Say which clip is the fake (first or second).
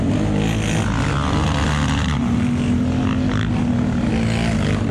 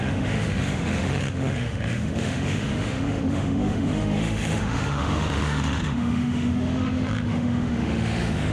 second